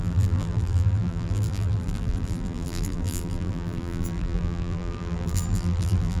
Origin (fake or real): fake